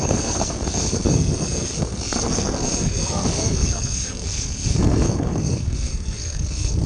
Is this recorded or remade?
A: remade